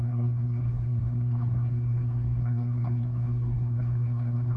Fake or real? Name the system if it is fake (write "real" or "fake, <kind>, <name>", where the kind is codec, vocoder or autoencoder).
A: fake, codec, SNAC